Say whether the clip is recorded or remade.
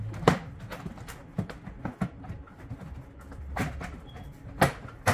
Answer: recorded